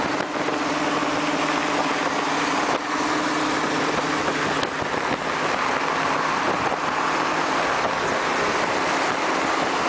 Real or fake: real